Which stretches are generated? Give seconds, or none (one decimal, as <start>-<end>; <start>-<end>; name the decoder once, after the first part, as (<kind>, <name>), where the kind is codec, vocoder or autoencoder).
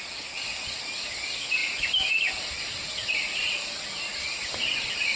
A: none